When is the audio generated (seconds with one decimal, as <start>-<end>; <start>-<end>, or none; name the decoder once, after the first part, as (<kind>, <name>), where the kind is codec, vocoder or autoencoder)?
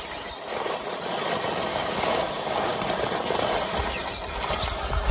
1.7-2.8 (codec, DAC)